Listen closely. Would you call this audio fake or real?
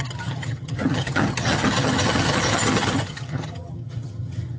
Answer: fake